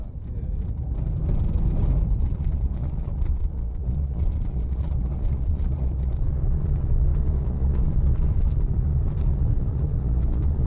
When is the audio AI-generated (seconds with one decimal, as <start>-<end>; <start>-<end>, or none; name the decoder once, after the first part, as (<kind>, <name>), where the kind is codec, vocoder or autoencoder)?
2.2-10.7 (vocoder, Vocos)